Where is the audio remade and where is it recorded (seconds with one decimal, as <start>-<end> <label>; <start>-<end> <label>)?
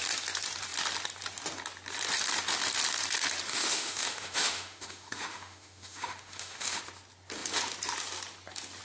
0.0-3.5 recorded; 3.5-6.8 remade; 6.8-8.8 recorded